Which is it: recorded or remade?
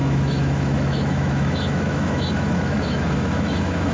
remade